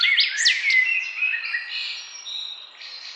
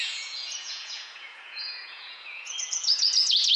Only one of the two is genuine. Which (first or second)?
first